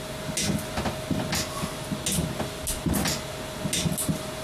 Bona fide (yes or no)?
yes